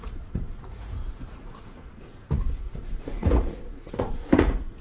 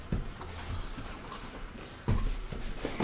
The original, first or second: second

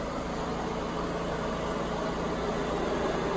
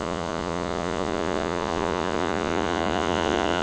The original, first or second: first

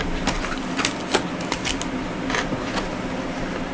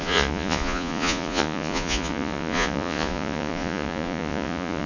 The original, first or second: first